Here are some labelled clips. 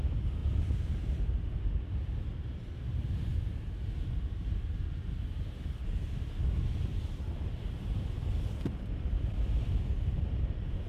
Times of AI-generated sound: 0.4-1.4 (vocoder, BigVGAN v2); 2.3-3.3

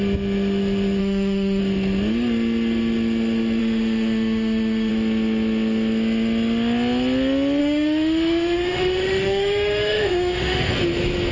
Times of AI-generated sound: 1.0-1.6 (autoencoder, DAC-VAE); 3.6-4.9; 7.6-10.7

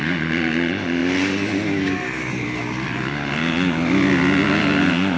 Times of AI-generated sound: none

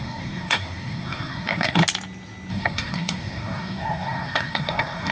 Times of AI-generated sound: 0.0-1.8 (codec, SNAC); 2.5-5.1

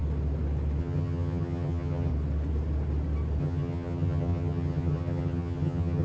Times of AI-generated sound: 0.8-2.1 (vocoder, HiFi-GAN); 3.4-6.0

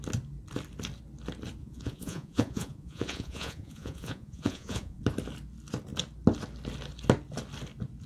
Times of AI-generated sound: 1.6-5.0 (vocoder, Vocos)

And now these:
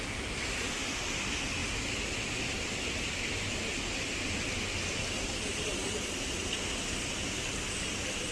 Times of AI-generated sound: none